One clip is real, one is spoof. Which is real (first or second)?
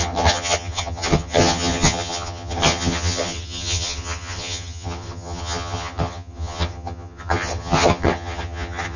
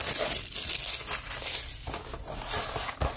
second